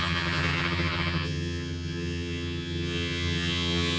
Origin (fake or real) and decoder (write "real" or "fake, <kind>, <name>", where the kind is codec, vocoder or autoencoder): fake, vocoder, HiFi-GAN